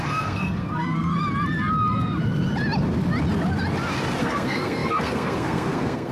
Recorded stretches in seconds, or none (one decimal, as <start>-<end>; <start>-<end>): 1.2-4.2